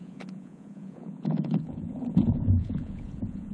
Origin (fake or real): fake